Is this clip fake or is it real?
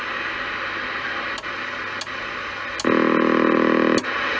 real